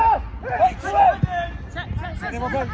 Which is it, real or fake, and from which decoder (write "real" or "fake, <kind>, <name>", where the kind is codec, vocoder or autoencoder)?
real